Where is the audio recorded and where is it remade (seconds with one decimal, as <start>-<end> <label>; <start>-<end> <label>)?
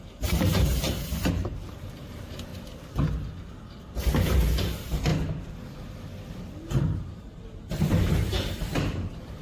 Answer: 0.0-2.5 remade; 2.5-4.6 recorded; 4.6-5.1 remade; 5.1-6.3 recorded; 6.3-9.4 remade